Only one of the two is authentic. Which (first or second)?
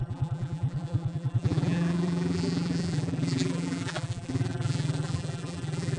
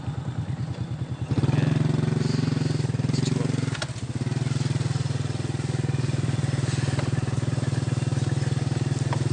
second